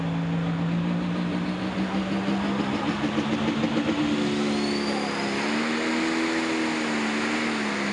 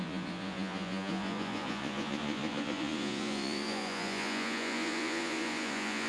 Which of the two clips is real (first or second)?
first